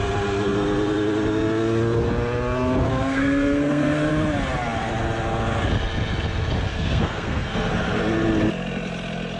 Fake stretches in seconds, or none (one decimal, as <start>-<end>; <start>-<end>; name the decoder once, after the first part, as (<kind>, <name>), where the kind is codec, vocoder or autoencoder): 2.9-4.1 (codec, SNAC); 6.7-7.7

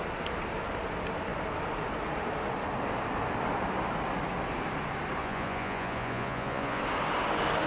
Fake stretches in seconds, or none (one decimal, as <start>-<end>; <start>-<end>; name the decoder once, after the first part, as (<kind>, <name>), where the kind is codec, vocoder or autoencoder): 5.2-6.8 (vocoder, Vocos)